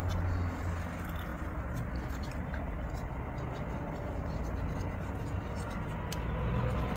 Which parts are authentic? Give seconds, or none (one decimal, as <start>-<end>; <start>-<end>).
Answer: 0.0-1.3; 2.7-7.0